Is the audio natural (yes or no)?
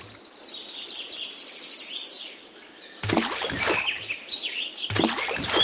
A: yes